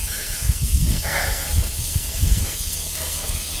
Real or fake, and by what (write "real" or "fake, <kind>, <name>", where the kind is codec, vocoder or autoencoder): fake, codec, SNAC